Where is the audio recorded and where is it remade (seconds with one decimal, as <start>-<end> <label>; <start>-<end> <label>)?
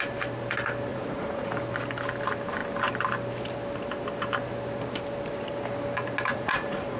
0.0-0.9 recorded; 0.9-1.5 remade; 1.5-6.3 recorded; 6.3-7.0 remade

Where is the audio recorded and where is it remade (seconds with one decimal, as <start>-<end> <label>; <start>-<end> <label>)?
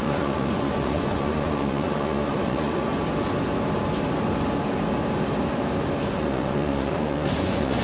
0.0-2.9 remade; 2.9-6.1 recorded; 6.1-7.8 remade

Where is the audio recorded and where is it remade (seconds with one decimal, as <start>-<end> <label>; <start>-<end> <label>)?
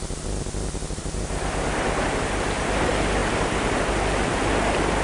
0.0-5.0 recorded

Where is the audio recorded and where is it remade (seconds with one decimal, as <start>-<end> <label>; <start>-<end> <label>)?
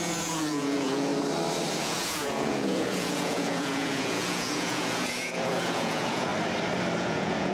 0.0-1.1 remade; 1.1-1.8 recorded; 1.8-6.3 remade; 6.3-7.0 recorded; 7.0-7.5 remade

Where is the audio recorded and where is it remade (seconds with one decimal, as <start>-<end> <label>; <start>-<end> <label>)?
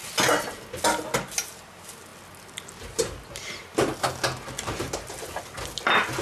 0.0-6.2 recorded